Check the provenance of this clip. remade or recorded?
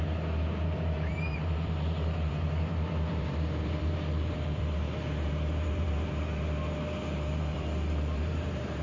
remade